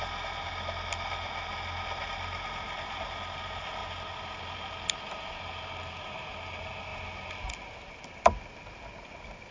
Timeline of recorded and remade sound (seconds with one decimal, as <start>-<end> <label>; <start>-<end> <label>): 0.0-3.8 recorded; 3.8-4.4 remade; 4.4-9.5 recorded